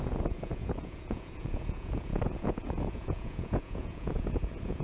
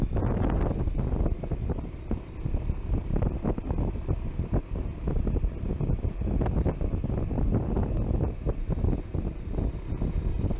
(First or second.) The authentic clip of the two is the second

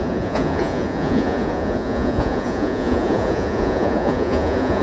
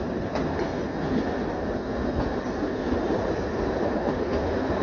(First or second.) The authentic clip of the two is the second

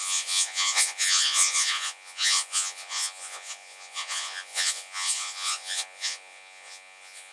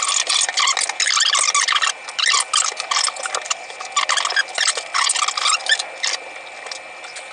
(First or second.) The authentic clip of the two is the second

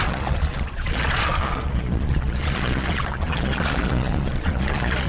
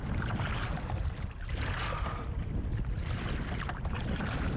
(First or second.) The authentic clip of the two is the second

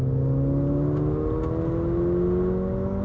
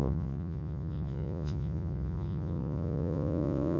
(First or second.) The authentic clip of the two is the first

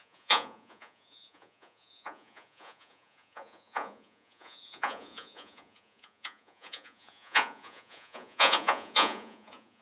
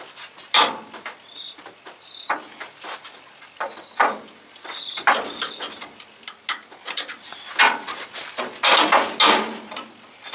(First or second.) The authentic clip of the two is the second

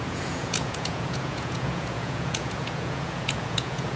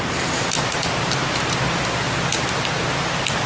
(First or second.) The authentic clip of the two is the second